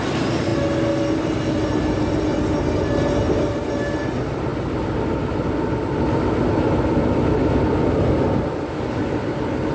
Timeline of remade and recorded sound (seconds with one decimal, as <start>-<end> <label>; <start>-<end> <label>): 0.0-9.7 recorded